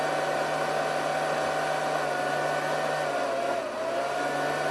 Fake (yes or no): no